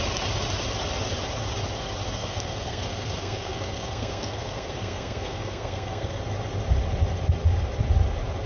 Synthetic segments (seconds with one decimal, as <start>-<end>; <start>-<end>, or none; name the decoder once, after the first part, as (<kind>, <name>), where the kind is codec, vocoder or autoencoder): 2.2-6.2 (codec, SNAC)